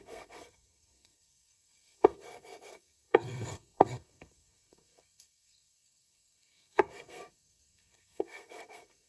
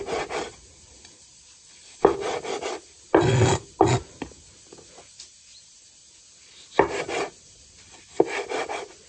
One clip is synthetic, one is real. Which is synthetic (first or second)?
first